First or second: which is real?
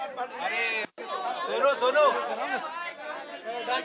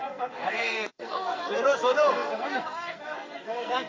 first